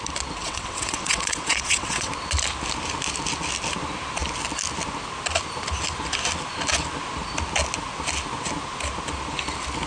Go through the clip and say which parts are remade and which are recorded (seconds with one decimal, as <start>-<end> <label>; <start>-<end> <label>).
0.0-0.4 recorded; 0.4-2.1 remade; 2.1-9.9 recorded